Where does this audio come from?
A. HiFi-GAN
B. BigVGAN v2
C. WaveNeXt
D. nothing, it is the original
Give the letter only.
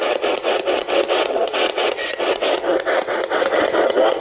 C